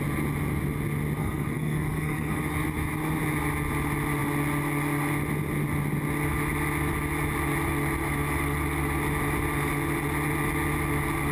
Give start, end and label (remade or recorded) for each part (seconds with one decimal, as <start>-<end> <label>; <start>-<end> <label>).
0.0-1.2 recorded; 1.2-2.4 remade; 2.4-11.3 recorded